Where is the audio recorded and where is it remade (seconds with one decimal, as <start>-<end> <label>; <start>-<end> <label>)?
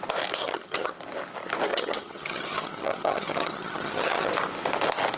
0.0-0.4 recorded; 0.4-0.9 remade; 0.9-1.7 recorded; 1.7-4.3 remade; 4.3-5.2 recorded